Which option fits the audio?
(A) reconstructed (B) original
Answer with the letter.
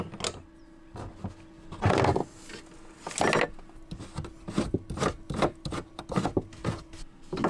B